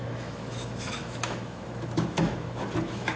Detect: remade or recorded remade